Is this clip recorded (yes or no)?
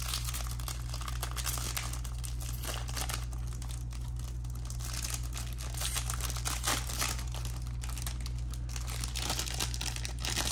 yes